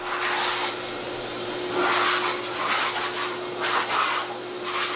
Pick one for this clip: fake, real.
real